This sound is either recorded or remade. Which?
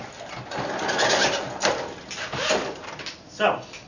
recorded